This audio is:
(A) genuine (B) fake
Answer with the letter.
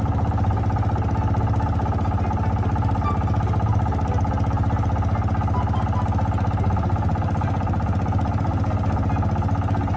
A